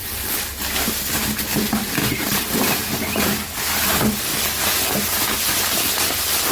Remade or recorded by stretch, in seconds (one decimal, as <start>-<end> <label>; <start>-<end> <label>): 0.0-2.0 recorded; 2.0-3.2 remade; 3.2-6.5 recorded